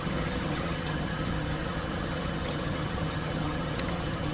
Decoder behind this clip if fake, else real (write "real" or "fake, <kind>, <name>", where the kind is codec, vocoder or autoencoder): fake, vocoder, HiFi-GAN